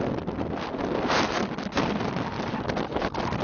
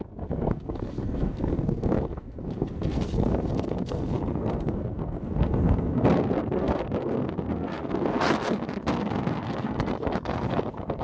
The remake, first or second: second